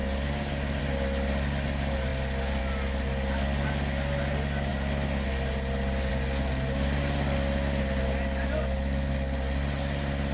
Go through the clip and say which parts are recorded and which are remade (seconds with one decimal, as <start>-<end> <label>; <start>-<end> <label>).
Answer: 0.0-10.3 recorded